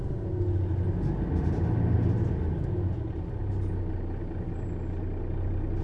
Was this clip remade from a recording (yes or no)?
no